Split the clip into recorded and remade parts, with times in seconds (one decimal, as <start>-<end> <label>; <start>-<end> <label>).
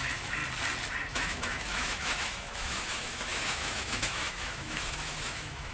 0.0-0.4 remade; 0.4-1.1 recorded; 1.1-5.7 remade